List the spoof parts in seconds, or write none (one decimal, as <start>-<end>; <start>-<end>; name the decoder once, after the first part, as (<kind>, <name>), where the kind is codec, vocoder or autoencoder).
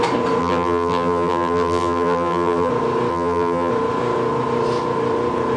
0.4-2.7 (vocoder, BigVGAN v2); 3.1-3.7